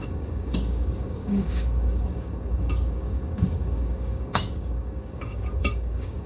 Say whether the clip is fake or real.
fake